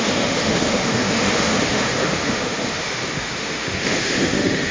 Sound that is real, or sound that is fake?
fake